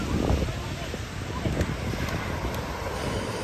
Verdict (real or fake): real